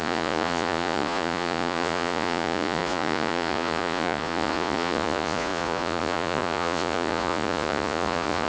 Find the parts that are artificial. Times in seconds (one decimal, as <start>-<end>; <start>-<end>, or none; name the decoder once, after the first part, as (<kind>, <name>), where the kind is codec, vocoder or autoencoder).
0.0-8.5 (vocoder, Vocos)